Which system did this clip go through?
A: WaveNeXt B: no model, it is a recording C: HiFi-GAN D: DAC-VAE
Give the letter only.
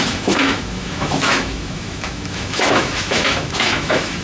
D